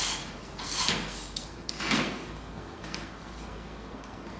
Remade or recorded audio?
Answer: remade